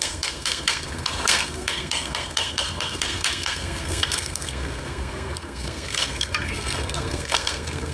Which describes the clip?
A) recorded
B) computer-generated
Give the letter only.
B